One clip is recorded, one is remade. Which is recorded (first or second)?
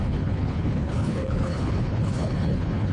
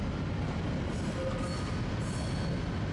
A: second